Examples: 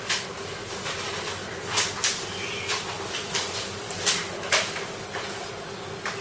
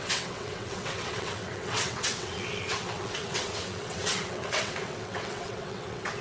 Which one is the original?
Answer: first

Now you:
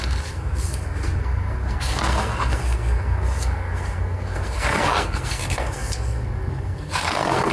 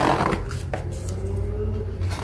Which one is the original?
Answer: second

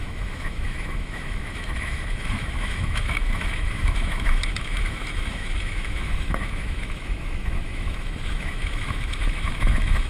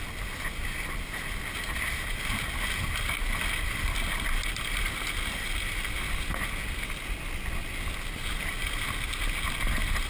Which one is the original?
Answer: second